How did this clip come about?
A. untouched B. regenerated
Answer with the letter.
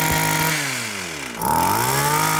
A